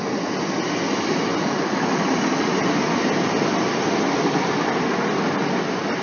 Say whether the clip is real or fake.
real